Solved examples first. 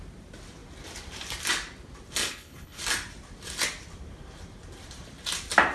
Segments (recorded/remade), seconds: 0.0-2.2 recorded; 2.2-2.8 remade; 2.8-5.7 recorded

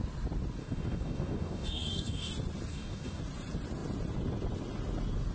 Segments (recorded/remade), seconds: 0.0-0.6 recorded; 0.6-2.3 remade; 2.3-2.7 recorded; 2.7-3.2 remade; 3.2-5.3 recorded